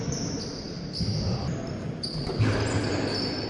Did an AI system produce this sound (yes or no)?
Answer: no